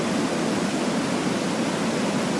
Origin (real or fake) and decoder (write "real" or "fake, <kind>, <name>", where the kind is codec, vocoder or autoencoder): real